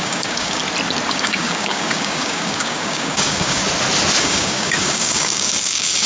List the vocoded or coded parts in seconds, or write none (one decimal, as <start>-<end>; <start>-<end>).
0.0-0.6; 1.1-3.6; 4.2-6.1